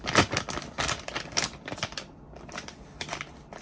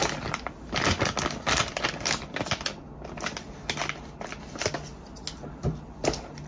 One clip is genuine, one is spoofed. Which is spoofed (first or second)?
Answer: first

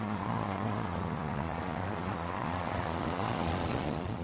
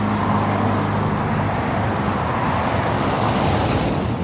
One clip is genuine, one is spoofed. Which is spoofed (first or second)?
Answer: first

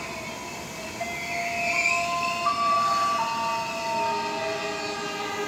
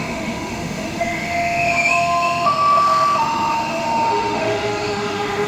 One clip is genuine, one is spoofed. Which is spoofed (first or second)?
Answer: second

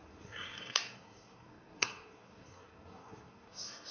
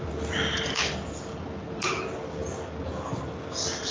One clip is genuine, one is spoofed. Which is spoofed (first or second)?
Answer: first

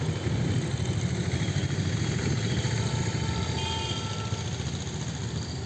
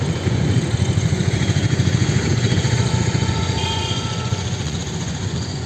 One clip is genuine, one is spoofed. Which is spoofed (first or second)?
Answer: second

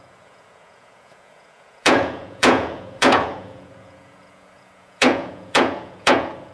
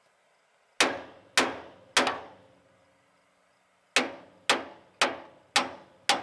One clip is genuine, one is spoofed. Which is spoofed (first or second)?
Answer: first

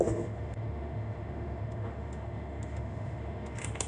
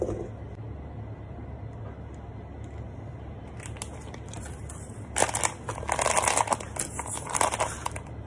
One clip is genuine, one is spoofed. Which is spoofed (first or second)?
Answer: first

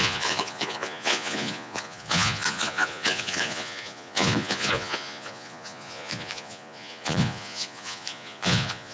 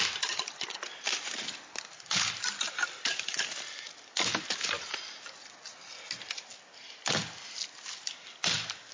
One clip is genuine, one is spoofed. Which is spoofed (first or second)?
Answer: first